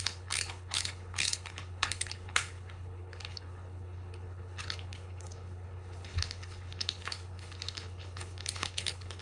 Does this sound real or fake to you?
fake